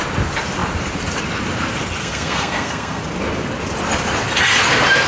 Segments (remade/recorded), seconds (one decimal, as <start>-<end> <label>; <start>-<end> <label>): 0.0-2.0 recorded; 2.0-3.0 remade; 3.0-5.1 recorded